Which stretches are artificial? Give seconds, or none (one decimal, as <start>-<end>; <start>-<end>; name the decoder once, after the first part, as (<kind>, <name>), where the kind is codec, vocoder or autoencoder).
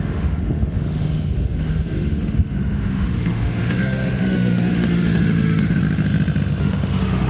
0.0-5.8 (autoencoder, DAC-VAE); 6.6-7.3